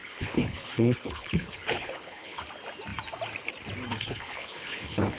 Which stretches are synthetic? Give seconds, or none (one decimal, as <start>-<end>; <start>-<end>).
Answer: 0.0-2.4; 3.9-5.2